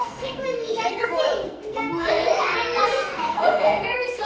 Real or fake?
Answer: fake